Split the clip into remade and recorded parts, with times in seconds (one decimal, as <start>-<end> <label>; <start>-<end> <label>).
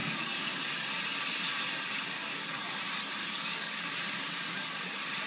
0.0-0.5 remade; 0.5-2.2 recorded; 2.2-2.8 remade; 2.8-3.2 recorded; 3.2-3.9 remade; 3.9-5.3 recorded